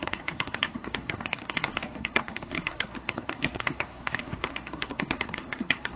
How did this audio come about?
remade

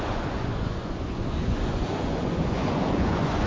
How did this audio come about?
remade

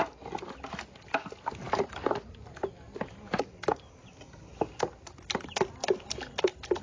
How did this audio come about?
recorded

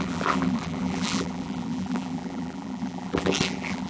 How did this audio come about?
remade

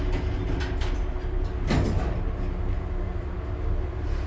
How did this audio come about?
recorded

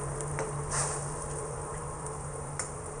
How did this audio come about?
remade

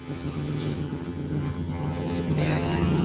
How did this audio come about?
remade